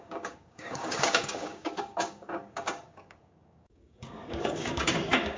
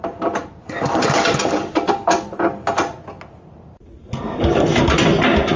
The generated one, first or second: first